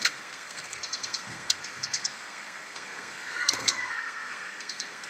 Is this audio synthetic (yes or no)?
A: yes